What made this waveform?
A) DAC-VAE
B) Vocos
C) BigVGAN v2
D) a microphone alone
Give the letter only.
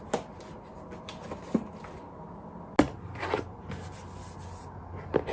D